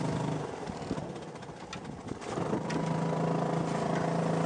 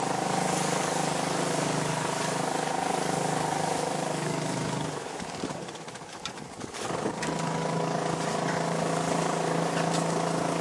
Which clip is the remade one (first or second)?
second